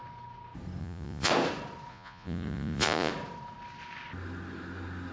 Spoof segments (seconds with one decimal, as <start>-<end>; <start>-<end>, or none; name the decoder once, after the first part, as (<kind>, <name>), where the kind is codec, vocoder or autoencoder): 0.8-1.3 (vocoder, Vocos); 1.9-3.1